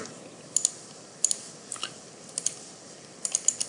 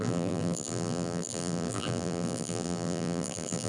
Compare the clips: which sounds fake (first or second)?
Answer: second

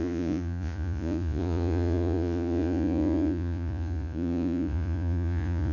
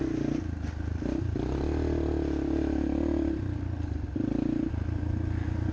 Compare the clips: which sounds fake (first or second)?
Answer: first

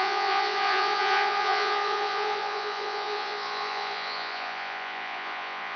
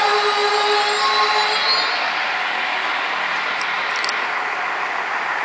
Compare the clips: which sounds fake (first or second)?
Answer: first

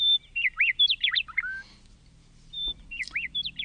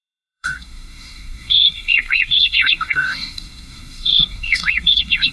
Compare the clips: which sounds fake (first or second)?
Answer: second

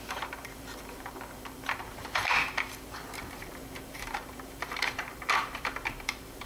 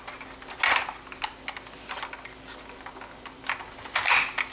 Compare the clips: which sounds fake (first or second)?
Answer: first